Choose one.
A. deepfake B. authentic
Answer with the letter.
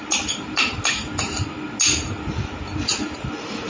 B